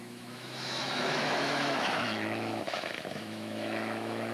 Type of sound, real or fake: fake